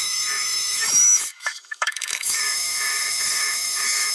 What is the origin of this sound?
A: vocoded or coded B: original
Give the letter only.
A